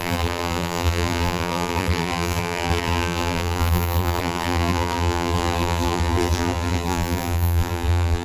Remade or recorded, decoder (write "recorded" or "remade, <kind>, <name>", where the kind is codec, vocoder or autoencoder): remade, vocoder, BigVGAN v2